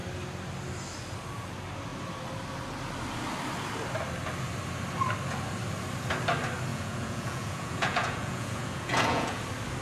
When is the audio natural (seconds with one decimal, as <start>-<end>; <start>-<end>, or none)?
0.0-6.7; 9.4-9.8

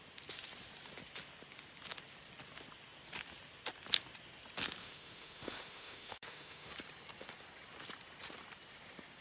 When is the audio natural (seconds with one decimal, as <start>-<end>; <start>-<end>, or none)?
0.0-4.8; 6.7-9.2